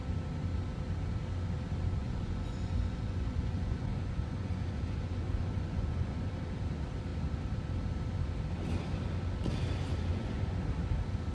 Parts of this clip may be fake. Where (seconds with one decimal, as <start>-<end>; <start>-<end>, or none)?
2.0-6.3; 10.1-10.6